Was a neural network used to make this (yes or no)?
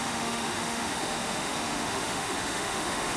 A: yes